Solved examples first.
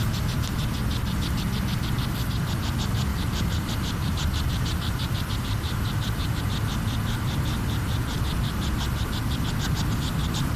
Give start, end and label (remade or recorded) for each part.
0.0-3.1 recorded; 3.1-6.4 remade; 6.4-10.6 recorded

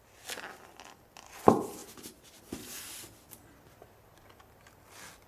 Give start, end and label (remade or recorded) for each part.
0.0-5.3 recorded